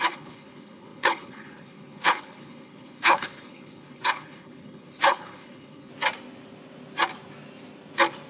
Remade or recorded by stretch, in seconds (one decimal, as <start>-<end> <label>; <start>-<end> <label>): 0.0-5.9 remade; 5.9-8.3 recorded